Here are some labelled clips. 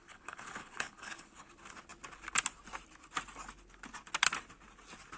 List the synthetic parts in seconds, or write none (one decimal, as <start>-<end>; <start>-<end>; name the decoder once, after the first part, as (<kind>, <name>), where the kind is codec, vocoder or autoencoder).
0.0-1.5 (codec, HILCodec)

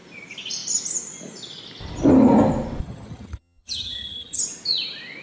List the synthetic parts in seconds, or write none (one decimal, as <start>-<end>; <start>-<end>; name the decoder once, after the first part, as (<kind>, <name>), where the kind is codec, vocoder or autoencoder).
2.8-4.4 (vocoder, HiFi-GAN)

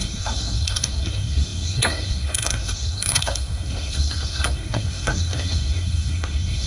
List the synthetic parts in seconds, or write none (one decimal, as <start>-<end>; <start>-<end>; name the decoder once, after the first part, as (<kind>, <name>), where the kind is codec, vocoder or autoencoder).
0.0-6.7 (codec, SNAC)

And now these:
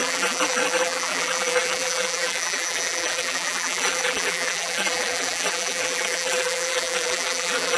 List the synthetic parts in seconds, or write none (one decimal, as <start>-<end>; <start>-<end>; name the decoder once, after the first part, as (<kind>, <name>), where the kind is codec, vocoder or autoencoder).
0.0-7.8 (vocoder, BigVGAN v2)

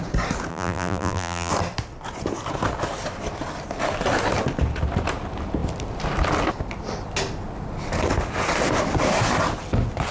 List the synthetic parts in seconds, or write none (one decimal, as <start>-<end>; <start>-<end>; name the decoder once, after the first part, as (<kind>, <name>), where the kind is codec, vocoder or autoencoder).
0.5-1.5 (vocoder, BigVGAN v2)